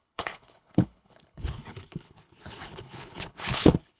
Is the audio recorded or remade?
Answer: remade